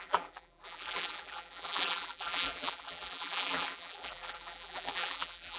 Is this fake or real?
fake